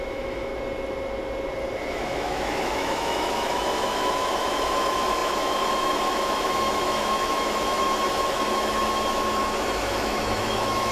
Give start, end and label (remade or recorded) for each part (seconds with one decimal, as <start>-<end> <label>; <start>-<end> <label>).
0.0-0.5 remade; 0.5-1.9 recorded; 1.9-10.9 remade